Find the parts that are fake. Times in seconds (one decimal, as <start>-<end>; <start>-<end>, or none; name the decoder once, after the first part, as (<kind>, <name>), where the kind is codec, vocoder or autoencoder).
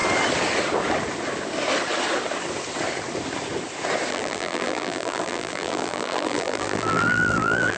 4.1-7.8 (vocoder, BigVGAN v2)